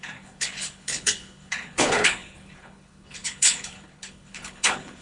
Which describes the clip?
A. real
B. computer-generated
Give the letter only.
B